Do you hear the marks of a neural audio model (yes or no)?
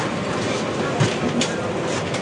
no